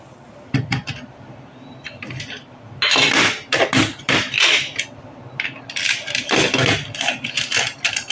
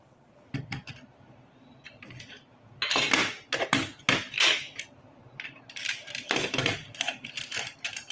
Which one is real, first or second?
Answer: first